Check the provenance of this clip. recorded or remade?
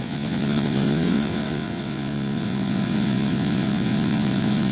remade